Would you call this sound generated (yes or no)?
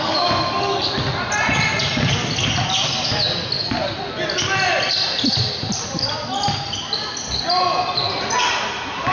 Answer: no